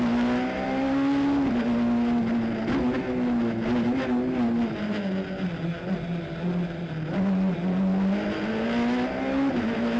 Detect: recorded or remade recorded